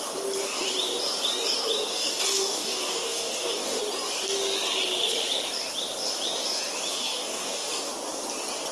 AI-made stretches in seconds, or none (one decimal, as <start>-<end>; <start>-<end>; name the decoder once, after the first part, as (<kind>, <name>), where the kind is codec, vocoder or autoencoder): 1.9-3.8 (codec, DAC); 6.9-7.9